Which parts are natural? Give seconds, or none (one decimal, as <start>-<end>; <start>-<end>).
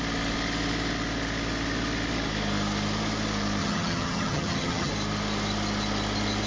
0.0-3.6; 4.9-6.5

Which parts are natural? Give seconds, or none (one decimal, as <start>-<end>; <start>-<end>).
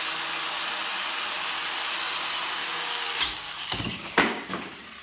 0.0-2.6; 4.5-5.0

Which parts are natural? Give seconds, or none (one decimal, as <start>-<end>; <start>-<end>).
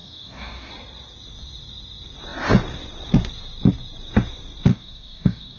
0.7-4.7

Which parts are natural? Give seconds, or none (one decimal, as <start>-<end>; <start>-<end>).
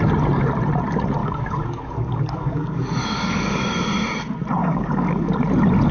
0.0-1.2; 3.8-4.6; 5.3-5.9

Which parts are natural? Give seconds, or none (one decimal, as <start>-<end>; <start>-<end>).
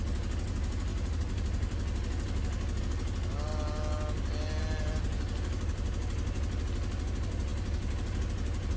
0.0-8.8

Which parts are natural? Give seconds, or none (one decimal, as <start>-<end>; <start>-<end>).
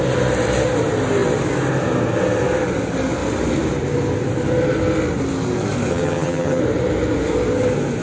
0.0-5.9; 6.6-8.0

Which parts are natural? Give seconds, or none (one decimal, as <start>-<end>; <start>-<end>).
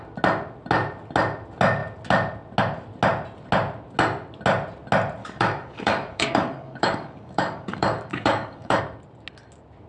0.0-5.2; 8.8-9.9